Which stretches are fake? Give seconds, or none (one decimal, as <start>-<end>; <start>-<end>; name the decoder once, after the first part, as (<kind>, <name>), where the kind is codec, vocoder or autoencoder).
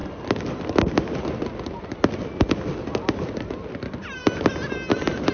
3.2-4.2 (vocoder, BigVGAN v2)